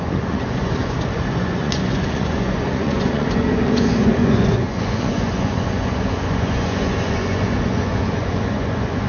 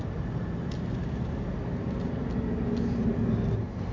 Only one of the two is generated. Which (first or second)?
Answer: first